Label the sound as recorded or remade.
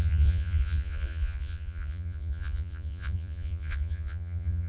remade